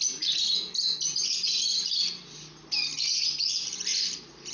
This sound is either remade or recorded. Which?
recorded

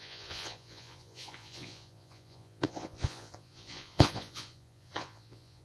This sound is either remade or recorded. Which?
remade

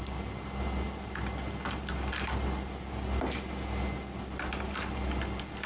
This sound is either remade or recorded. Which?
recorded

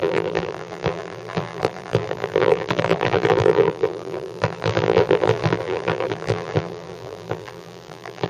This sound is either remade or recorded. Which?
remade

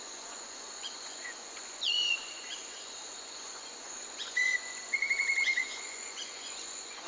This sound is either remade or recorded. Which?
remade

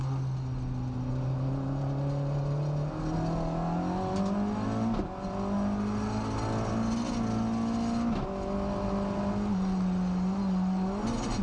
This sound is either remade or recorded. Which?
recorded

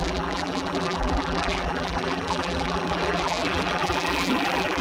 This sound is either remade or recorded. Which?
remade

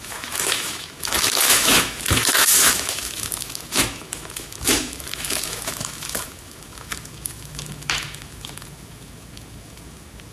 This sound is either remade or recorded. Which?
remade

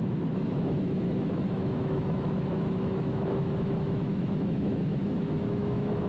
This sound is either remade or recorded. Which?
remade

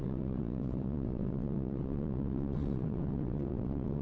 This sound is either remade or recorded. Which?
remade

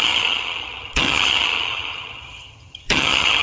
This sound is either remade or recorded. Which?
remade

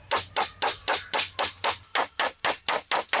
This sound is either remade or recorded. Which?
recorded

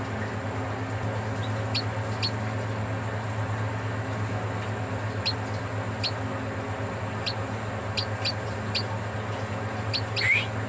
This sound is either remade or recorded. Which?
recorded